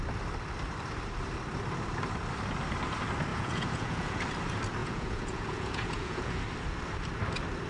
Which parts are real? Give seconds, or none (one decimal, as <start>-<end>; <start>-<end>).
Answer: 0.0-3.3; 4.2-4.8; 6.4-7.7

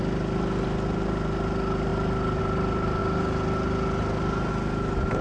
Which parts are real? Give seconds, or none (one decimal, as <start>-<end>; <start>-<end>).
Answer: 0.0-5.2

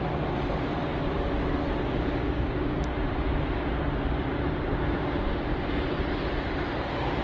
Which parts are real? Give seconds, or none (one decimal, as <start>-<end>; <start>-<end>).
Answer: 0.0-2.2; 2.8-7.2

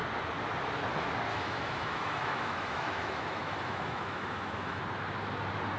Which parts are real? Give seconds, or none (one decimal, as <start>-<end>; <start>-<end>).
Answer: 0.0-1.3; 4.8-5.8

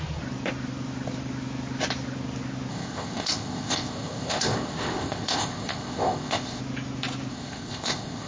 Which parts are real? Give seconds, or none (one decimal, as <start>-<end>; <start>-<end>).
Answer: 0.0-2.7; 6.6-7.3

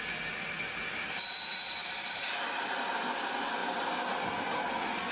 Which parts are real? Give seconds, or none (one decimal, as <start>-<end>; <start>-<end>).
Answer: 0.0-1.8; 2.4-5.1